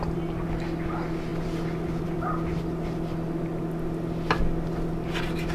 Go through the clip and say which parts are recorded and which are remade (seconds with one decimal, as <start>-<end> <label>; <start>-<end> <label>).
0.0-5.5 recorded